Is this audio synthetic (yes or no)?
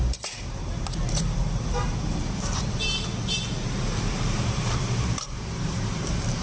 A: yes